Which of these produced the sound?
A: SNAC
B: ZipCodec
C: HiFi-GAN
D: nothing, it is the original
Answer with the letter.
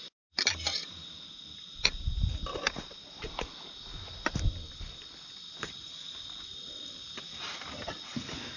D